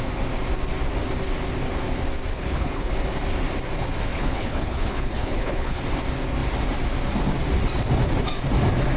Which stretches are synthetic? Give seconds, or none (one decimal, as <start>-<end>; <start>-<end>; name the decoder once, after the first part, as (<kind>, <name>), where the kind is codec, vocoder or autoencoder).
2.3-2.9 (codec, HILCodec); 4.1-5.8